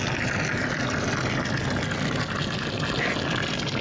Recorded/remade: recorded